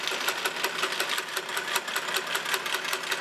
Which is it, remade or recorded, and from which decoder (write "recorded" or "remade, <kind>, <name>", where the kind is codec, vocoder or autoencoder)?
recorded